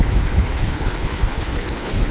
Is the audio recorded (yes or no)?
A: no